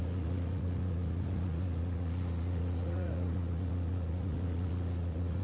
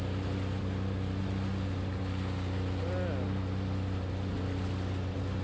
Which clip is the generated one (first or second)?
first